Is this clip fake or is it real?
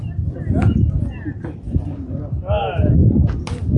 real